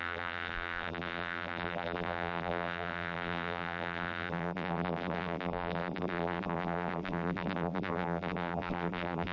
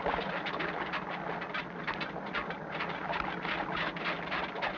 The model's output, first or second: first